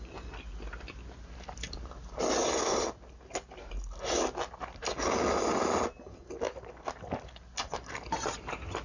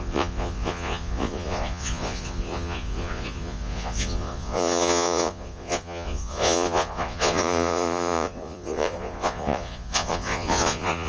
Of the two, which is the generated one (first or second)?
second